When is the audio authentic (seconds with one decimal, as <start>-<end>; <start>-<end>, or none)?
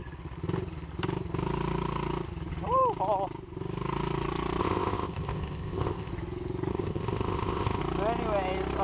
0.0-4.6; 6.1-6.7; 7.8-8.8